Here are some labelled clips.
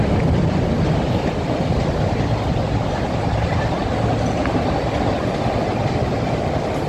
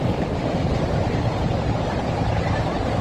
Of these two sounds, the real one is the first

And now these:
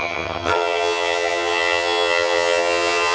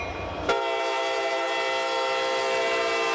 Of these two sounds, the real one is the second